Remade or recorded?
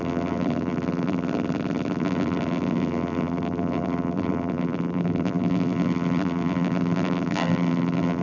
remade